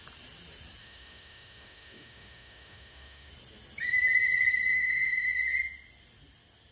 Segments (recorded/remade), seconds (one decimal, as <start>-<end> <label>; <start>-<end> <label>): 0.0-0.8 recorded; 0.8-3.3 remade; 3.3-4.7 recorded; 4.7-5.3 remade; 5.3-6.7 recorded